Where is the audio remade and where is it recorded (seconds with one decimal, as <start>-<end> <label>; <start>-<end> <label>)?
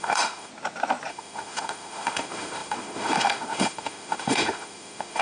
0.0-0.5 remade; 0.5-1.1 recorded; 1.1-5.2 remade